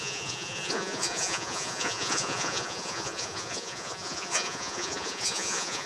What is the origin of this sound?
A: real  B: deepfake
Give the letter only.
B